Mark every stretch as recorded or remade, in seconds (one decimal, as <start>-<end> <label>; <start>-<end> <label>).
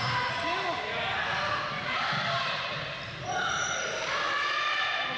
0.0-5.2 recorded